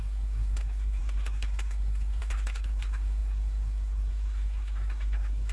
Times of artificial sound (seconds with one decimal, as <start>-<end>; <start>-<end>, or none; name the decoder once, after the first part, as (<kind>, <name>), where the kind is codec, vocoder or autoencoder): 0.0-5.5 (codec, SNAC)